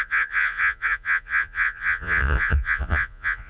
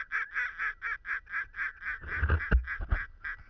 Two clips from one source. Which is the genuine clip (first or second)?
second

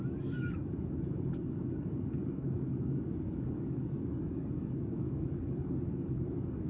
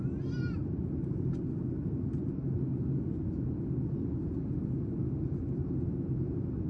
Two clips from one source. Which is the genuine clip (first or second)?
second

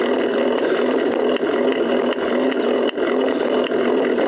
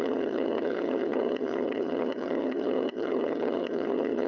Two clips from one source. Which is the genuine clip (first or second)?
first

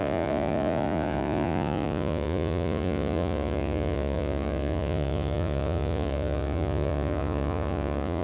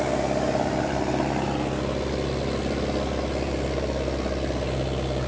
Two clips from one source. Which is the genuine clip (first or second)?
second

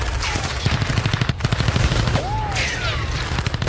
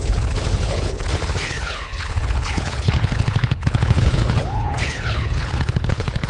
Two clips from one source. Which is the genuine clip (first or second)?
first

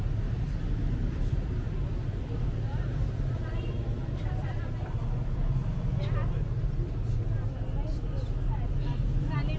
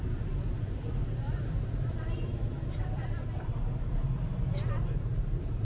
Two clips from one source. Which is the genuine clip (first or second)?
first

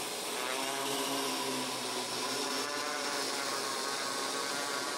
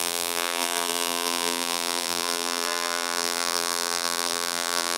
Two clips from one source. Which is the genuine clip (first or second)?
first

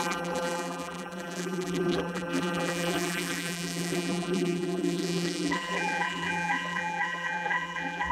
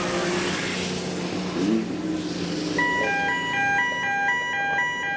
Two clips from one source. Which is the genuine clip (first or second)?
second